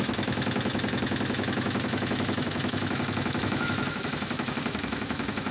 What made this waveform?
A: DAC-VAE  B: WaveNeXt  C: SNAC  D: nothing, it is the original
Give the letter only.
A